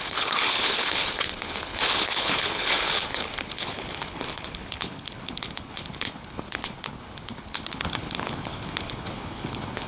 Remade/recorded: remade